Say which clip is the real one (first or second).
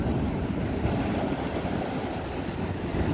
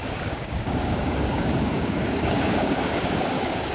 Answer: first